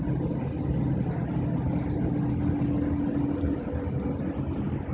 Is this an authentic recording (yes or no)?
yes